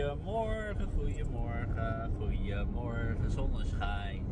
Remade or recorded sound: recorded